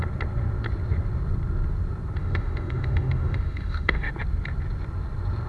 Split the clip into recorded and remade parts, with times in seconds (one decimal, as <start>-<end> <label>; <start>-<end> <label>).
0.0-2.2 recorded; 2.2-4.1 remade; 4.1-5.5 recorded